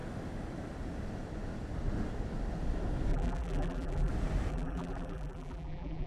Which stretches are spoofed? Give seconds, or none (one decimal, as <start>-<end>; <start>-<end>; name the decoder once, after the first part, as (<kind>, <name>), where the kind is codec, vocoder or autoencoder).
3.1-4.1 (vocoder, BigVGAN v2); 4.5-6.1